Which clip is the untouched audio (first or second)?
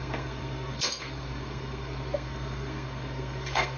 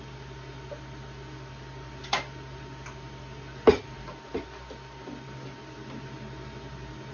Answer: second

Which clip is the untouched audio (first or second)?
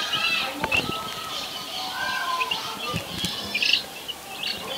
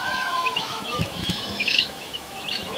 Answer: first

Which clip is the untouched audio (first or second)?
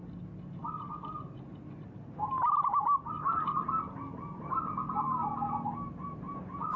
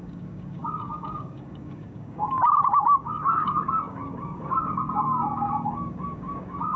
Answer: first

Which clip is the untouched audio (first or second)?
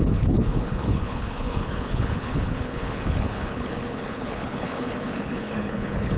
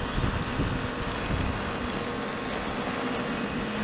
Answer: second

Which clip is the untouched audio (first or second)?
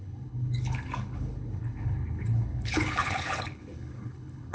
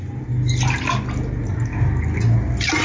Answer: second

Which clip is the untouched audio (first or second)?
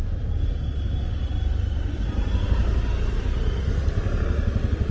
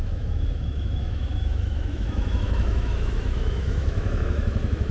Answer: first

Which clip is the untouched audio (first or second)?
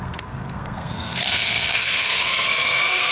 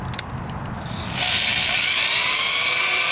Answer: second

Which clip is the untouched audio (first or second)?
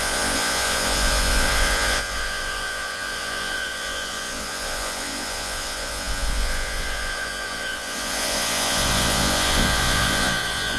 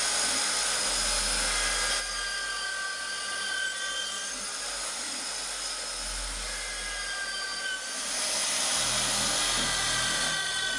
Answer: second